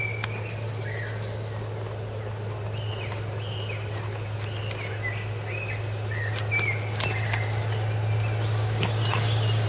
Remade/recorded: recorded